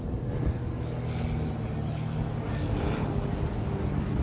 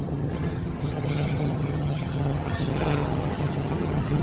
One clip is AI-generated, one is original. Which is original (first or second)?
first